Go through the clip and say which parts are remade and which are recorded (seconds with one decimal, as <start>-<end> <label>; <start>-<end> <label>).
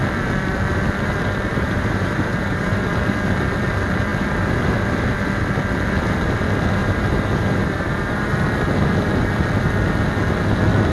0.0-1.5 recorded; 1.5-2.8 remade; 2.8-6.8 recorded; 6.8-8.3 remade; 8.3-10.9 recorded